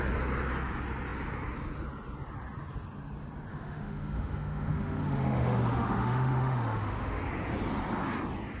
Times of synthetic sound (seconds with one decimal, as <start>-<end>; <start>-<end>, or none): 3.5-7.2

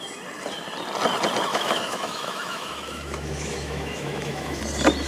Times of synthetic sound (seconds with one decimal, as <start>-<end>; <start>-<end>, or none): 1.5-4.6